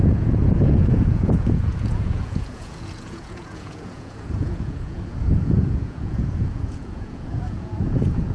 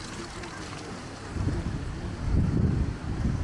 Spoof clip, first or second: first